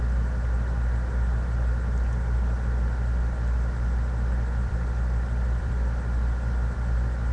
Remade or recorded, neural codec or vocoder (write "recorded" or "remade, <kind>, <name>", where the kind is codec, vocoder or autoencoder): remade, vocoder, BigVGAN v2